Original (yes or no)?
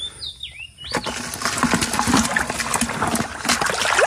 yes